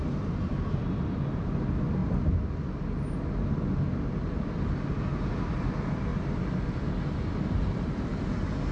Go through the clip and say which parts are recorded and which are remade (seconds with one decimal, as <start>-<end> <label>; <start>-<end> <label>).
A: 0.0-2.0 remade; 2.0-5.6 recorded; 5.6-6.1 remade; 6.1-7.2 recorded; 7.2-8.1 remade; 8.1-8.7 recorded